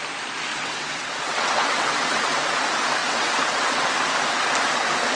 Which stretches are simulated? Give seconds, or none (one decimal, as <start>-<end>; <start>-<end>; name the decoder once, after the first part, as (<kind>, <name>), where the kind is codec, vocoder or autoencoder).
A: 0.5-2.2 (vocoder, WaveNeXt); 3.0-3.9